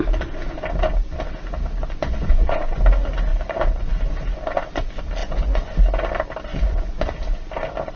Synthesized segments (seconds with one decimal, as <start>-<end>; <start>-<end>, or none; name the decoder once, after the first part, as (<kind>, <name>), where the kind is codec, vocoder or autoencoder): 1.8-2.8 (vocoder, Vocos); 3.3-3.9; 5.2-5.8; 6.5-7.1